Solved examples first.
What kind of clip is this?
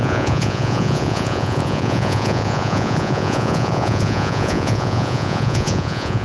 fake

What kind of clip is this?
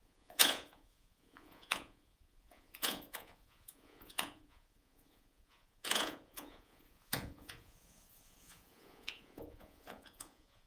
fake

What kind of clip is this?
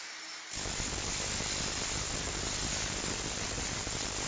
real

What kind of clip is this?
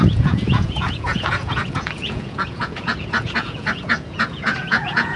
fake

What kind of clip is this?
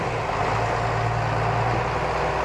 real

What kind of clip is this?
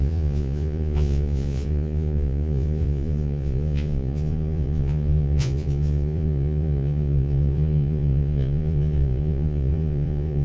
fake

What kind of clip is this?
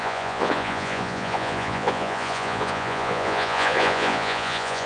fake